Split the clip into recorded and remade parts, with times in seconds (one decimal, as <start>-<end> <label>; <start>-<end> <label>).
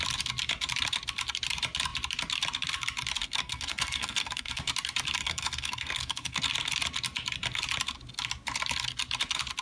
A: 0.0-3.2 recorded; 3.2-4.7 remade; 4.7-5.2 recorded; 5.2-6.4 remade; 6.4-9.6 recorded